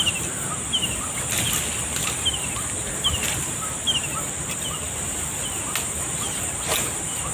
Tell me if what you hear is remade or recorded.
recorded